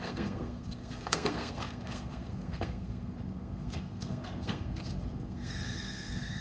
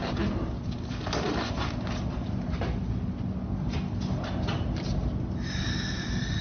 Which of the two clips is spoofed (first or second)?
first